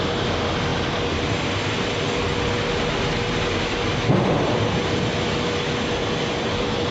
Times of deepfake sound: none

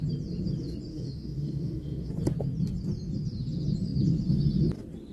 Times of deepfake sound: 0.9-2.1 (autoencoder, DAC-VAE)

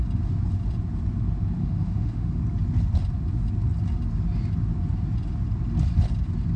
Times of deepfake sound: 1.6-2.4 (autoencoder, DAC-VAE)

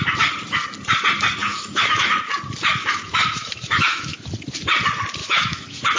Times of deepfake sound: 1.4-2.1 (autoencoder, DAC-VAE); 2.8-4.3; 5.2-6.0

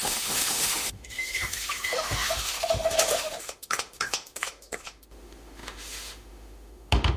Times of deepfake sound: 0.0-7.2 (autoencoder, DAC-VAE)